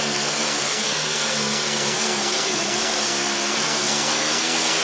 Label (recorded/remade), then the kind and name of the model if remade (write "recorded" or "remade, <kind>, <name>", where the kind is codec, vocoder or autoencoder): remade, codec, SNAC